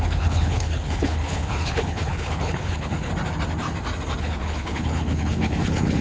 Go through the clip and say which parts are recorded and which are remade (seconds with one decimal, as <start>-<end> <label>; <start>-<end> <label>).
0.0-3.1 remade; 3.1-4.2 recorded; 4.2-6.0 remade